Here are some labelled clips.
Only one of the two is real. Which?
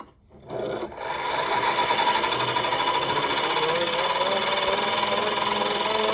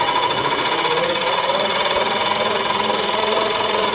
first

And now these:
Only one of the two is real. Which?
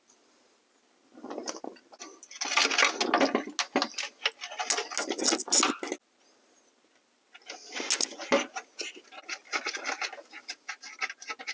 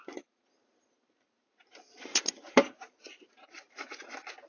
first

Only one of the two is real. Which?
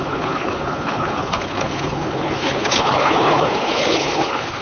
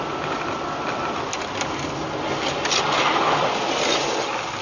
second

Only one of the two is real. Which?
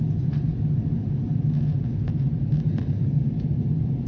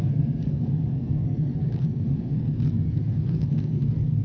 first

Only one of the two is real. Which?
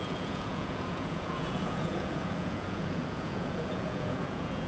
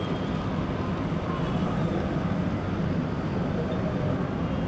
second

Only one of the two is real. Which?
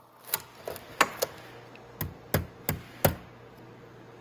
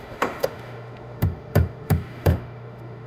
first